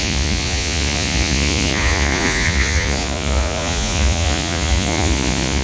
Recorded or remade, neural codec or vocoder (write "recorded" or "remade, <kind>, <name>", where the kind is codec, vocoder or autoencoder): remade, vocoder, Vocos